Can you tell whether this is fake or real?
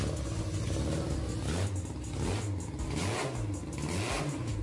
real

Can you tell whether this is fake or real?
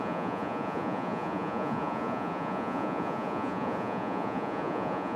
fake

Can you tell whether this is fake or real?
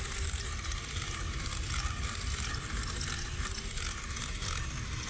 real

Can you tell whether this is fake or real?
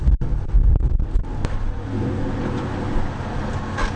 real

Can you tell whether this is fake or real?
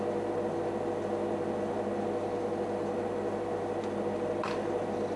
real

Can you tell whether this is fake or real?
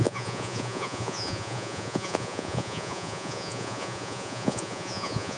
fake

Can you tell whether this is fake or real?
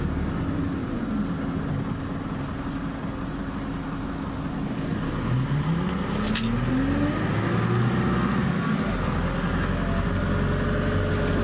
real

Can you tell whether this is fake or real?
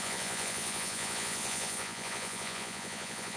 fake